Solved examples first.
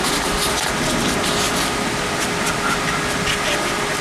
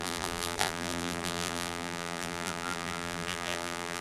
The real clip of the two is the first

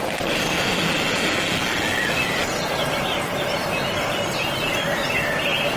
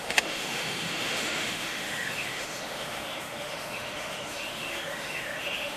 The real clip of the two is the first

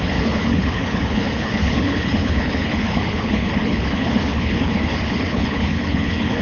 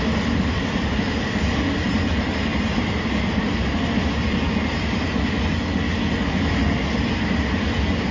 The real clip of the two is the second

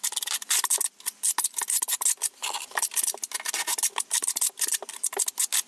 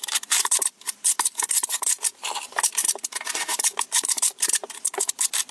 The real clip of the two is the first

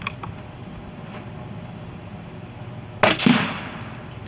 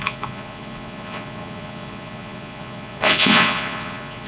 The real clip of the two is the first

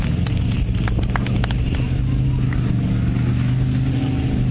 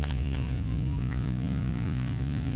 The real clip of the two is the first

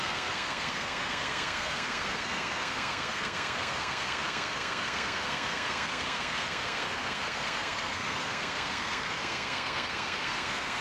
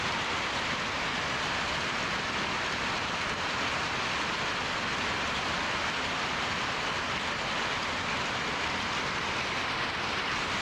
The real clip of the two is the second